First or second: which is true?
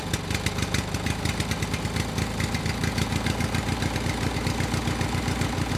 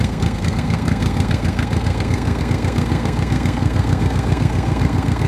first